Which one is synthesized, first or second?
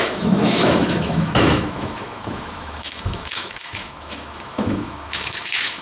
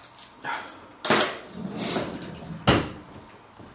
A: first